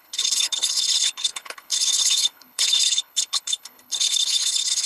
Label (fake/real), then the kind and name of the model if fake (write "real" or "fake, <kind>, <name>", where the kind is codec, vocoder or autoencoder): fake, codec, HILCodec